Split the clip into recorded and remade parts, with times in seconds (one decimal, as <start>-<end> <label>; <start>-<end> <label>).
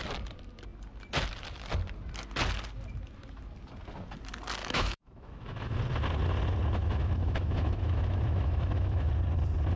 0.0-4.6 recorded; 4.6-5.8 remade; 5.8-6.8 recorded; 6.8-9.1 remade; 9.1-9.8 recorded